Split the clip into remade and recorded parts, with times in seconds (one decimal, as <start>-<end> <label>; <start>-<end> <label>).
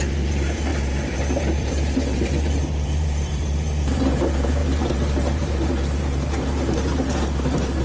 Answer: 0.0-7.8 remade